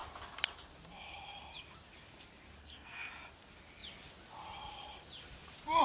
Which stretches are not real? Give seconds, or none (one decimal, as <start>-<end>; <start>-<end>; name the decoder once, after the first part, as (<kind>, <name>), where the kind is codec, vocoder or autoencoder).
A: 2.6-3.1 (codec, SNAC)

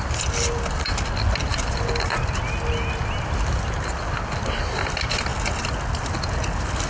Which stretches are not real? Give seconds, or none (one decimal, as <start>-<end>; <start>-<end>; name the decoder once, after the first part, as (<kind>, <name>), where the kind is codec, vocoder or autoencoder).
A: none

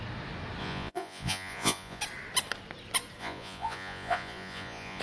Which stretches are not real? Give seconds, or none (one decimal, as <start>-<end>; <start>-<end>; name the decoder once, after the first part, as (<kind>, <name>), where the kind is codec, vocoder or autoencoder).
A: 0.6-2.0 (vocoder, Vocos); 3.2-5.0